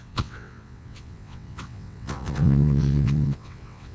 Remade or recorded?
remade